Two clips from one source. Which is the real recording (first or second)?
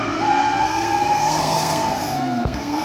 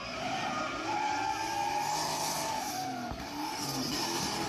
second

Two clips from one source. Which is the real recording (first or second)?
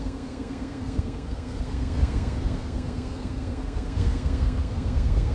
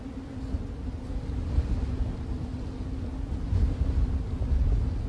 second